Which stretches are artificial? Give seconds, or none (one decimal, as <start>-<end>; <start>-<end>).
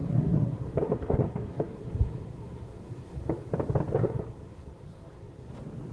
0.0-3.5; 4.0-5.5